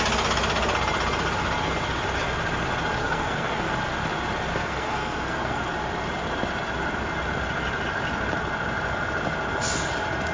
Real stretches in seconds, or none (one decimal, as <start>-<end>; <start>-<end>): 0.0-3.0; 3.7-4.5; 5.6-10.3